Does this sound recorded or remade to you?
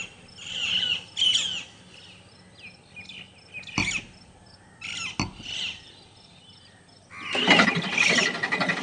recorded